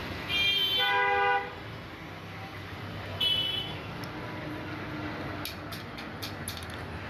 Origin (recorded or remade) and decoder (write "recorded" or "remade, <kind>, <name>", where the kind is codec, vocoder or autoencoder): recorded